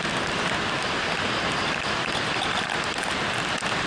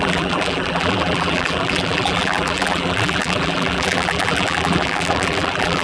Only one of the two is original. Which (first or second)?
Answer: first